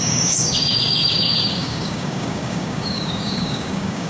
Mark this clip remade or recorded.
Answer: remade